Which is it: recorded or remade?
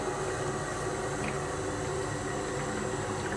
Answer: recorded